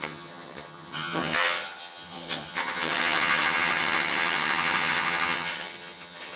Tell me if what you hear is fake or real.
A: fake